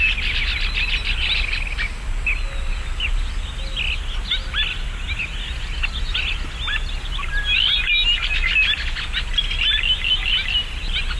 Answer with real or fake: real